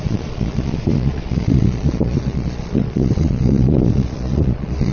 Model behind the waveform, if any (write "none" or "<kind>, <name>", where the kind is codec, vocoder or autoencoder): vocoder, Vocos